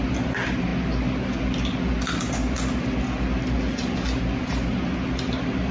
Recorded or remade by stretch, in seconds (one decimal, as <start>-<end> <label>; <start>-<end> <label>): 0.0-5.7 recorded